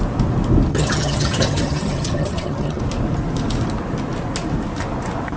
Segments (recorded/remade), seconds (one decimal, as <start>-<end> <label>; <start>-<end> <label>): 0.0-0.7 recorded; 0.7-2.8 remade; 2.8-5.4 recorded